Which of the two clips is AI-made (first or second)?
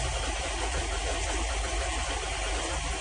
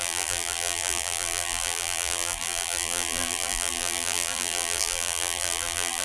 second